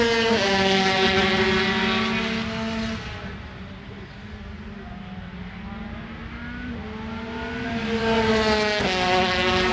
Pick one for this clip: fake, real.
real